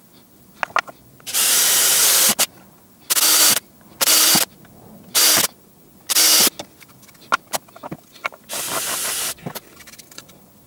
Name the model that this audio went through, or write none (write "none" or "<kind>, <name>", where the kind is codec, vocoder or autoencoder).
none